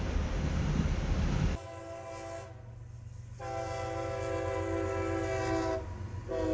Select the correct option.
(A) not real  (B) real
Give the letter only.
B